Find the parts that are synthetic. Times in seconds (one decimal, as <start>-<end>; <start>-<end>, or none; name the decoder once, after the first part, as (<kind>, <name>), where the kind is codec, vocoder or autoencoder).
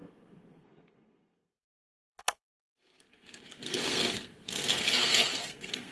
0.0-5.9 (codec, SNAC)